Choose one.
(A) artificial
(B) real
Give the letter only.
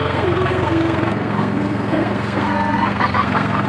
A